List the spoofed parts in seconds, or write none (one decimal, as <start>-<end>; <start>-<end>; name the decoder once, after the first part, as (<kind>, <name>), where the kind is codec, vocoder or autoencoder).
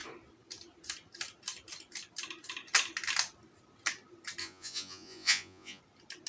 4.4-5.8 (vocoder, Vocos)